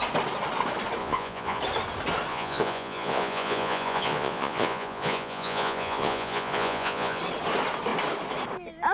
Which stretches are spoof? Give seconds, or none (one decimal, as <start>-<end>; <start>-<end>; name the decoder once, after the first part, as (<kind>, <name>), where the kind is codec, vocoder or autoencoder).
1.0-1.6 (vocoder, Vocos); 2.3-7.2